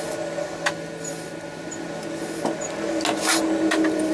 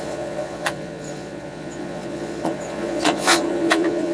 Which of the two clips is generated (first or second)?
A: second